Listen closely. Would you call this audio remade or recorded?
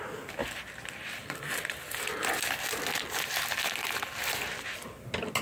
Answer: recorded